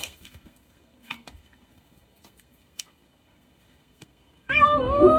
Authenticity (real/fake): fake